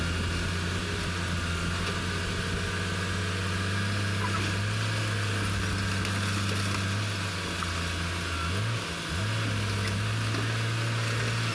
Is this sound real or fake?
real